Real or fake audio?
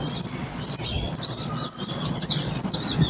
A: fake